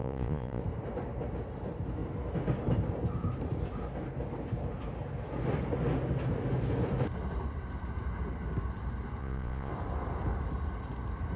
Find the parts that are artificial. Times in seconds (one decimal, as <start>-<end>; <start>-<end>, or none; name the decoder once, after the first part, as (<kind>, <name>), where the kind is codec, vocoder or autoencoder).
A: 0.0-0.6 (vocoder, Vocos); 9.2-9.7